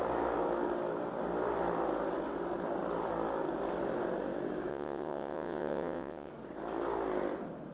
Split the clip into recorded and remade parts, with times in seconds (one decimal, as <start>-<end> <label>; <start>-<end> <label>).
0.0-4.7 recorded; 4.7-6.3 remade; 6.3-7.7 recorded